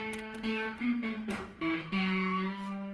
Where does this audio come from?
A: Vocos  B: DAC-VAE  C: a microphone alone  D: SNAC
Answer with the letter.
B